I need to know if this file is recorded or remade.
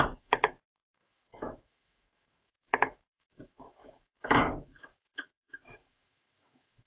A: remade